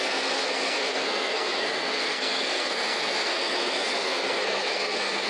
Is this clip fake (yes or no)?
yes